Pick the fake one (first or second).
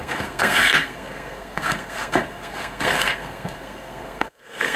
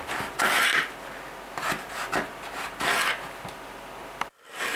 first